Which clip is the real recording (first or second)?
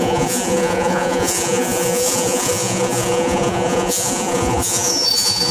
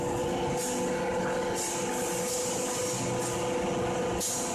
second